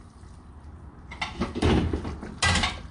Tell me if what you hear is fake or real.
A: real